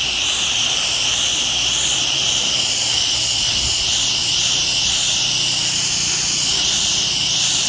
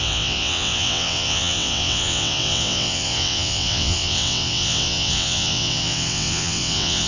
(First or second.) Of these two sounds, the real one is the first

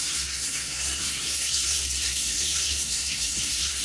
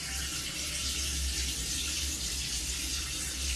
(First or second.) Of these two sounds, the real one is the second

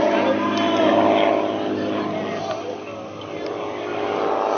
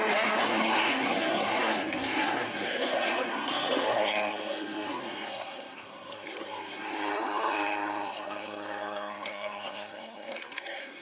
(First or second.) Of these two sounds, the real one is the first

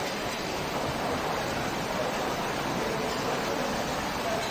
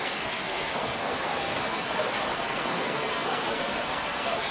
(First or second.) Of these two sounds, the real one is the first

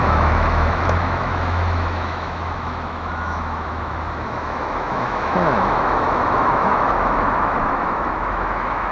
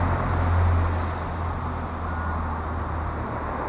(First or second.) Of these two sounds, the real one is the second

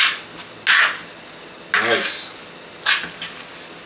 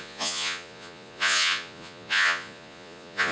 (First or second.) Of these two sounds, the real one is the first